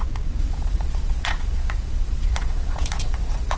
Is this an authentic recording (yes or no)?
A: no